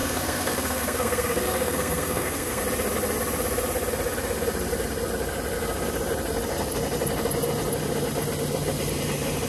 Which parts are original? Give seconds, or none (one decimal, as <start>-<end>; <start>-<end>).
2.6-9.5